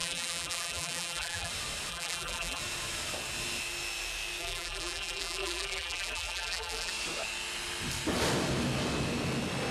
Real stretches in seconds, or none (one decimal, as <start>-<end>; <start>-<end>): 1.5-1.9; 2.6-4.4; 6.9-9.7